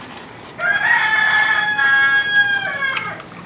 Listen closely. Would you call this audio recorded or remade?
recorded